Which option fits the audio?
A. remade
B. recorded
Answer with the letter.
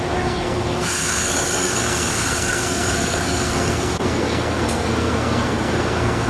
A